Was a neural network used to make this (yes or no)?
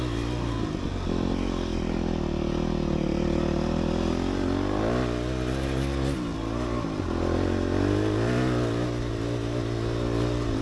no